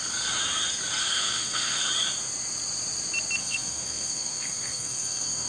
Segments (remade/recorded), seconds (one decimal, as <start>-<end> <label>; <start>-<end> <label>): 0.0-1.0 recorded; 1.0-1.9 remade; 1.9-3.4 recorded; 3.4-5.5 remade